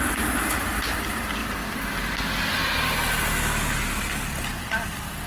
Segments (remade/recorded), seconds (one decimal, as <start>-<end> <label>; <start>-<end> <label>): 0.0-5.3 recorded